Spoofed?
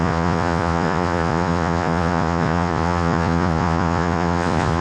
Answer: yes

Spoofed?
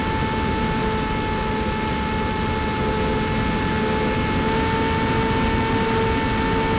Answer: no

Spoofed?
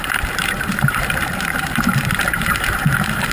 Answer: yes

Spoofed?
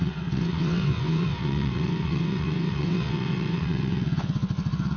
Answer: yes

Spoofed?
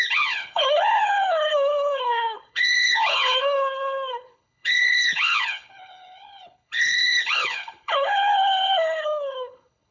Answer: yes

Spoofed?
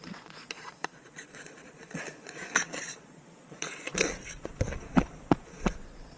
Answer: yes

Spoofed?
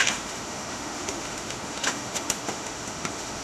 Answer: yes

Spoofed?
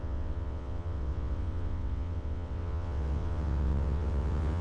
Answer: yes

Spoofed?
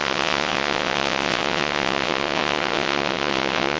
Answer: yes